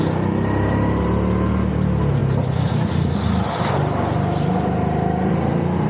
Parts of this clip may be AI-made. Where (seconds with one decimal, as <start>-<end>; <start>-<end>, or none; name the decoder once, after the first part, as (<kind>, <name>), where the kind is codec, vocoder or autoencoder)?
none